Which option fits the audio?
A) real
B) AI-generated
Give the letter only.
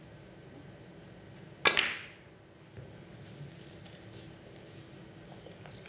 A